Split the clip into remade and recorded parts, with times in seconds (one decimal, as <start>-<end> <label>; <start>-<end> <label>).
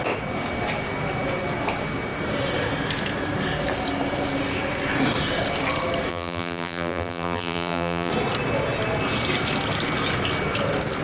0.0-6.1 recorded; 6.1-8.1 remade; 8.1-11.0 recorded